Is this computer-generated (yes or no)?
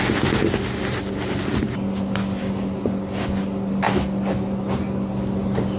no